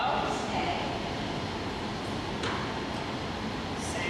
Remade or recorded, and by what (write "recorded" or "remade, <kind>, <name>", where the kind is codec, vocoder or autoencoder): recorded